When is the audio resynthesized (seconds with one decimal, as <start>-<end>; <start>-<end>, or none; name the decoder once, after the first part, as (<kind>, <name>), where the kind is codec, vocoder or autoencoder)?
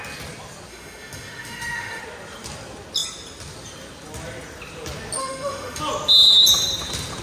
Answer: 0.7-2.0 (autoencoder, DAC-VAE); 5.2-5.8